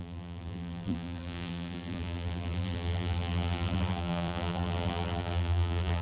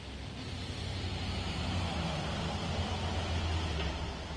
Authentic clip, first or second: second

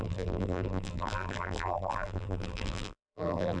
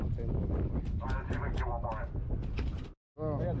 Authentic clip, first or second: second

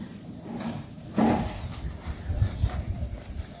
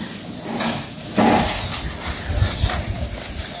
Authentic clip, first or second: second